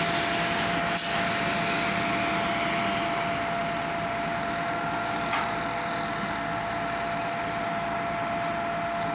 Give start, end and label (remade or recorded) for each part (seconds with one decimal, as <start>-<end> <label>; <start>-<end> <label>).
0.0-9.1 recorded